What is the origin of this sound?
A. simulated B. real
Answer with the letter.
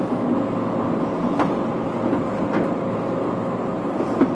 B